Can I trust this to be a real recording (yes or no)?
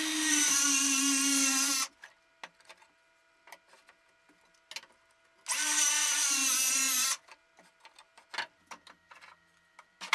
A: yes